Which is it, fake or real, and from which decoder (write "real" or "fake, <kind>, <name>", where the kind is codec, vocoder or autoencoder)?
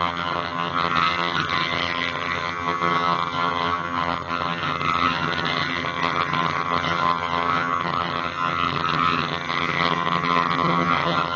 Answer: fake, vocoder, HiFi-GAN